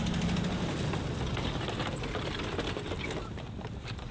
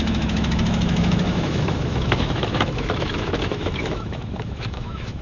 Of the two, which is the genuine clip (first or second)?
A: first